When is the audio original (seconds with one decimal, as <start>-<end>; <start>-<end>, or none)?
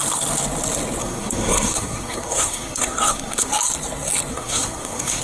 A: 0.0-1.0; 3.5-4.3